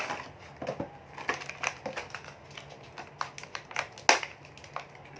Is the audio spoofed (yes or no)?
no